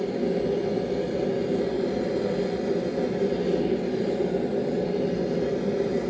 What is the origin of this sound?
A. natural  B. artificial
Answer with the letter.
A